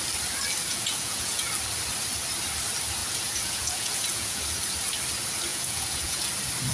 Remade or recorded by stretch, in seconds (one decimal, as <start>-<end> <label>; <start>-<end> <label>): 0.0-0.7 recorded; 0.7-1.5 remade; 1.5-3.0 recorded; 3.0-4.4 remade; 4.4-5.5 recorded; 5.5-6.2 remade; 6.2-6.7 recorded